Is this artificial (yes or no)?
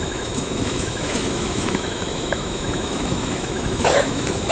yes